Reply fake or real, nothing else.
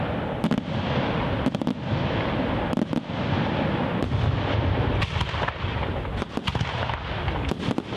real